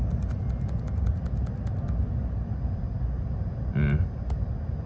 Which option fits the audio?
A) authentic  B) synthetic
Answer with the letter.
A